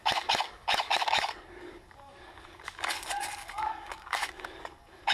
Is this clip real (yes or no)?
no